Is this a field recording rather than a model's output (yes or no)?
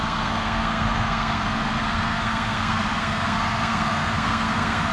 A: no